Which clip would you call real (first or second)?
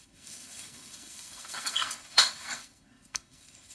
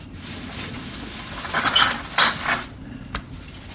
second